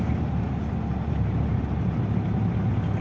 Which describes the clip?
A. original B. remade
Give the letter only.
A